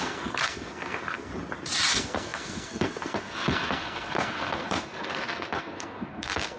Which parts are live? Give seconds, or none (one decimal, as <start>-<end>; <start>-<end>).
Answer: 1.3-1.9